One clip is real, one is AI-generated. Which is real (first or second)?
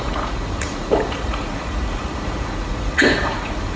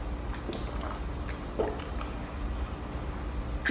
second